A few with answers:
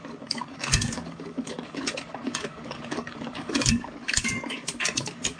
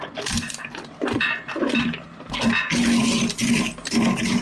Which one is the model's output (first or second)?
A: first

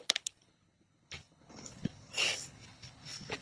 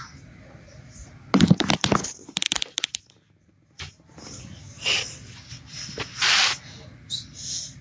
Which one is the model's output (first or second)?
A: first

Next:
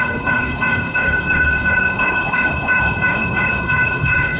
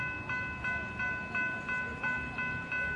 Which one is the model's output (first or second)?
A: first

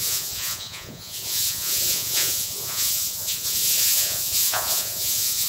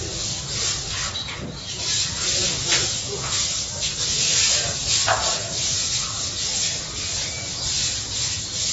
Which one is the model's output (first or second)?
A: first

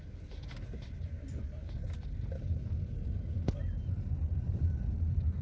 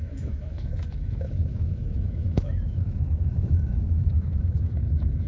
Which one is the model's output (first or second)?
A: second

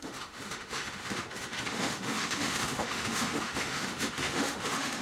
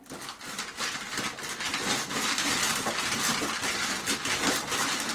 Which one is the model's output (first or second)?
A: first